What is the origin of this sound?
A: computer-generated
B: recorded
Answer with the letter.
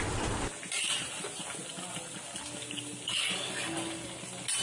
B